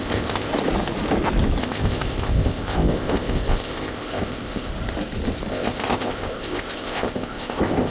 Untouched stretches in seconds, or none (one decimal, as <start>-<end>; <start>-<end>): 0.5-1.6; 4.7-5.5